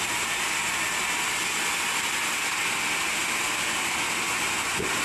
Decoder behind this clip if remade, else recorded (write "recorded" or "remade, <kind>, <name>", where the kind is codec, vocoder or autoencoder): recorded